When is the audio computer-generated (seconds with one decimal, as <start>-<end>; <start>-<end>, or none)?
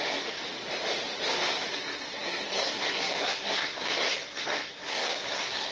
0.0-0.4; 1.7-5.7